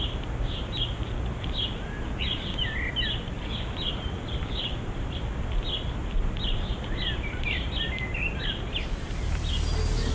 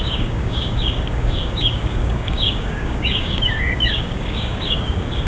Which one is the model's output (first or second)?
second